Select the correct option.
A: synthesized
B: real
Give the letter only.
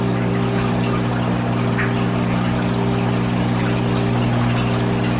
B